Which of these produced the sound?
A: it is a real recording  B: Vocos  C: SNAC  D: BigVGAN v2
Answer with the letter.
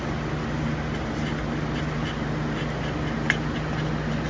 A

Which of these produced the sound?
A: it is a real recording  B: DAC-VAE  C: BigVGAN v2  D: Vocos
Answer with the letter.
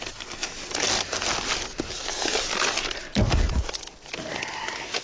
A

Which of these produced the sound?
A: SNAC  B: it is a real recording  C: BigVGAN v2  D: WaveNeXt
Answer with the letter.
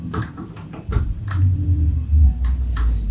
C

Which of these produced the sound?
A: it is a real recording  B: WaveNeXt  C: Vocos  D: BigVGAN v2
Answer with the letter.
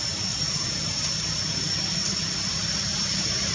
D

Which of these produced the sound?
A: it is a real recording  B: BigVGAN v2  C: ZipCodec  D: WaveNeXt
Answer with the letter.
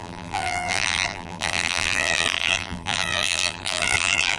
B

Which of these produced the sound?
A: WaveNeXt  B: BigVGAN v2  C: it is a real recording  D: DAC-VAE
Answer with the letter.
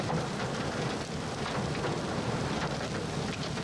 B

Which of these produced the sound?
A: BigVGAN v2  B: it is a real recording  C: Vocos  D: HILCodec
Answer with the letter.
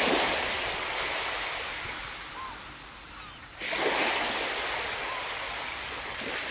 B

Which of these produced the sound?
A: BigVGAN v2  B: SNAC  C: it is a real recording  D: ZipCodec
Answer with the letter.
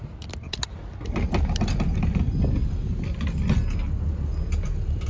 C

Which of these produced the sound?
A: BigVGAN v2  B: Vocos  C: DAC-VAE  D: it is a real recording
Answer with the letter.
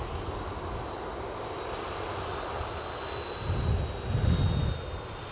D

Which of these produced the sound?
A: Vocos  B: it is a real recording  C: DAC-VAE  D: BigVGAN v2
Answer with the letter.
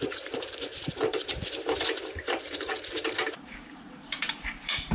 D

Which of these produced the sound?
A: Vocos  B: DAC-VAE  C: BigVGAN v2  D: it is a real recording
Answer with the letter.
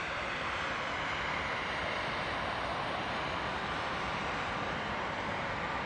C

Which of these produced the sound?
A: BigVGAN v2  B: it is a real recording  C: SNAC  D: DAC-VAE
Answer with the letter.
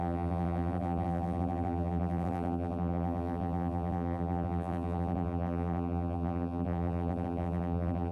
A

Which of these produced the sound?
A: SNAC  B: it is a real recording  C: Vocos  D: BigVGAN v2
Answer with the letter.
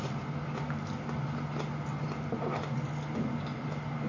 B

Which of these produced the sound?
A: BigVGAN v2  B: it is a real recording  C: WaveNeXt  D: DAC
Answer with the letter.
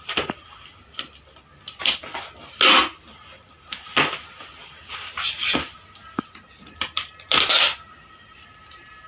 B